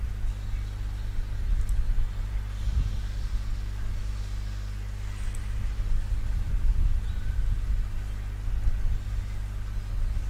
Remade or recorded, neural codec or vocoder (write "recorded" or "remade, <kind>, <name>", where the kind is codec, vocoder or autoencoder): recorded